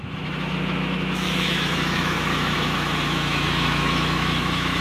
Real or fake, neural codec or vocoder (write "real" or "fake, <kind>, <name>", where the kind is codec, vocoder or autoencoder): fake, autoencoder, DAC-VAE